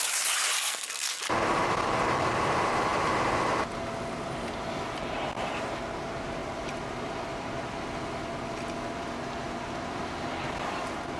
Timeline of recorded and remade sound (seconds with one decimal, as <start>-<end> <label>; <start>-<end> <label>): 0.0-0.6 recorded; 0.6-1.2 remade; 1.2-11.2 recorded